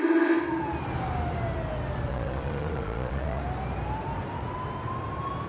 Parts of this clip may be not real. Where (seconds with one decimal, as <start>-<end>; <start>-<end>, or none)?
2.1-3.4